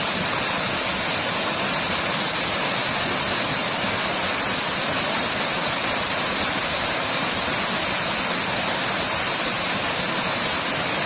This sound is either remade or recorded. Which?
recorded